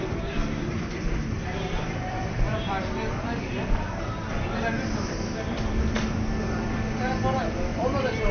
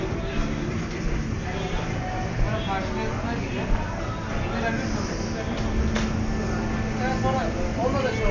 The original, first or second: second